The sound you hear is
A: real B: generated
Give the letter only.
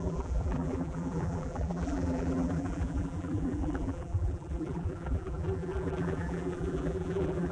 B